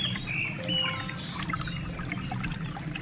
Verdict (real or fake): real